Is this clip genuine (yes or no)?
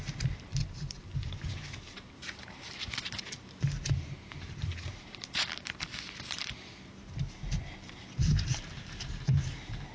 no